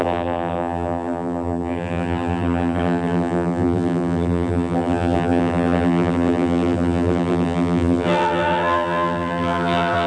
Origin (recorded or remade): remade